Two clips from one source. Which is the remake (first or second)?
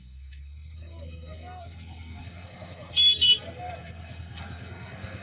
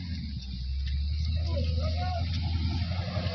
first